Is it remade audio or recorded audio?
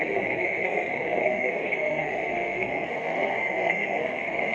remade